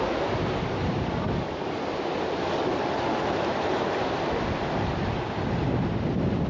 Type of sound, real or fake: real